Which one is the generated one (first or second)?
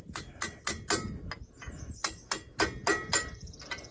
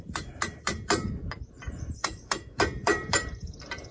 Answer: second